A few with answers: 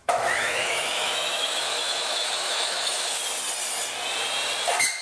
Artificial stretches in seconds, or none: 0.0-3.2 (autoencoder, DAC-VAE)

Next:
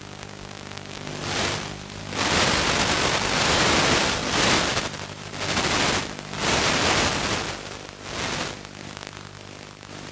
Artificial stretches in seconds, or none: 1.2-2.0 (vocoder, BigVGAN v2); 4.7-5.3

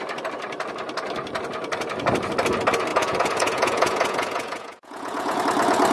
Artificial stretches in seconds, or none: 2.9-5.4 (vocoder, Vocos)